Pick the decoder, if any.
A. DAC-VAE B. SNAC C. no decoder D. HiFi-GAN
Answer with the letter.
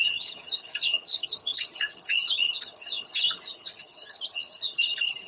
D